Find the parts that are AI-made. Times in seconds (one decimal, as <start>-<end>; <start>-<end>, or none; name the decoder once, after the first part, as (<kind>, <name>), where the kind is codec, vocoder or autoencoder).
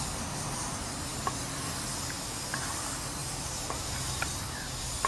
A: none